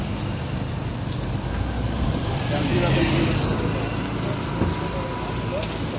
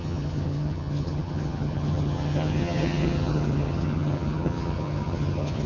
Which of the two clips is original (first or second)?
first